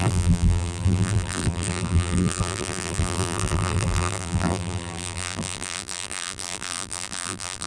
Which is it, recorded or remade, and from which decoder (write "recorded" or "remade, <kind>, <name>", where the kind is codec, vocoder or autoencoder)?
remade, vocoder, BigVGAN v2